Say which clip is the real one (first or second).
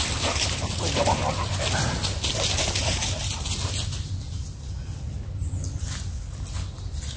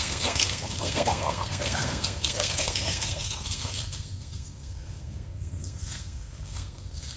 first